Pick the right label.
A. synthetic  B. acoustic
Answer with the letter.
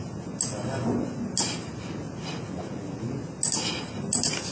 B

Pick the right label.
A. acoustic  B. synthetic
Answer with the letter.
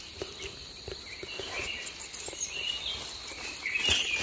A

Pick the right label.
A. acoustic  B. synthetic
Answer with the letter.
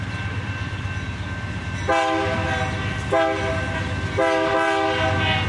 A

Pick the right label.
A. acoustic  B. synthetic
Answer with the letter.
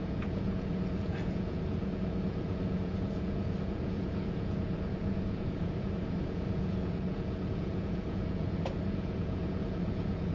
B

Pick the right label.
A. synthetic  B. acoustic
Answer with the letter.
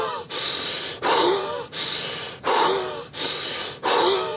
B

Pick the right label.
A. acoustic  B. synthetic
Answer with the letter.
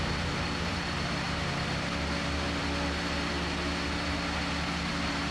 A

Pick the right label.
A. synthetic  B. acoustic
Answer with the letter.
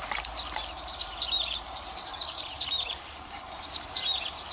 A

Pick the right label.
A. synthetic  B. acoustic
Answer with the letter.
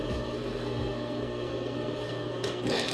A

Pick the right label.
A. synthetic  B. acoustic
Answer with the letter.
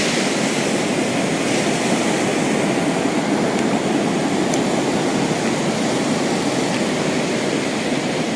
B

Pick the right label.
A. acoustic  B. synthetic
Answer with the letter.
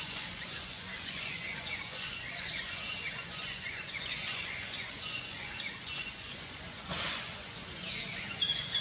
B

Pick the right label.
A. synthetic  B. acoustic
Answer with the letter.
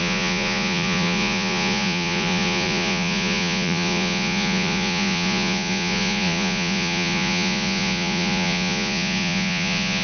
A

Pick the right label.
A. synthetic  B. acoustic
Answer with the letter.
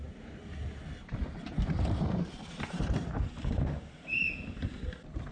B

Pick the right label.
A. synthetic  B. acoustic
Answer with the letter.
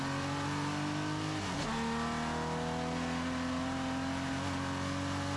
B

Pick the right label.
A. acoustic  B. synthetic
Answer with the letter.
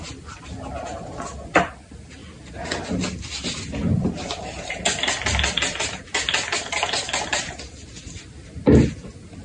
A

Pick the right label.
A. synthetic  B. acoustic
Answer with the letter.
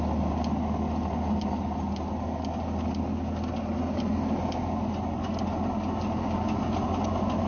B